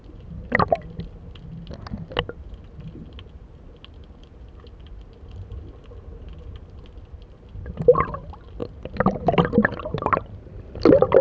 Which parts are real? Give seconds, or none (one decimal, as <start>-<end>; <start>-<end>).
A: 0.0-11.2